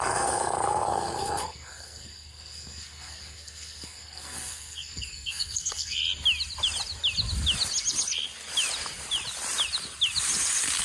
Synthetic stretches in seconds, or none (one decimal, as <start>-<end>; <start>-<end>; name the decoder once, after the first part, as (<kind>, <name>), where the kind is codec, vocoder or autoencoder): 0.0-6.0 (codec, SNAC)